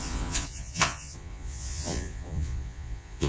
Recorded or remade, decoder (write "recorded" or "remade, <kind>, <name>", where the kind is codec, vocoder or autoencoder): remade, vocoder, Vocos